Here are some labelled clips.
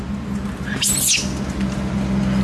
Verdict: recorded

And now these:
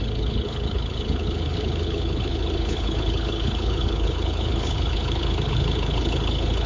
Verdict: remade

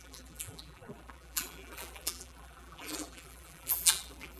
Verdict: remade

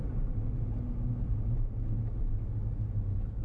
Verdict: recorded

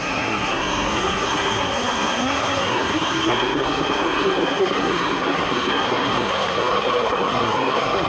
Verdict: remade